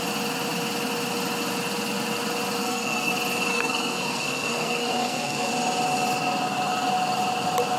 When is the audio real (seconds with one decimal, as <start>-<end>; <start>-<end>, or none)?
0.0-2.6; 3.1-3.5; 5.5-7.8